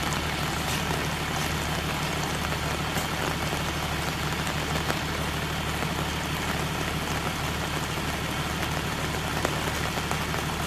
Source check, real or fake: real